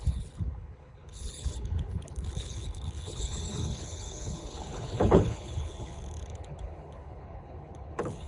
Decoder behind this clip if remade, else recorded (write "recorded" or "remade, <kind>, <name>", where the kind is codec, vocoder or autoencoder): remade, codec, HILCodec